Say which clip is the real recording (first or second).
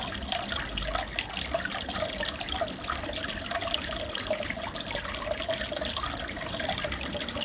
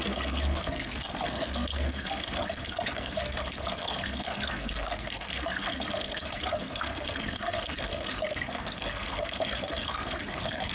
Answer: first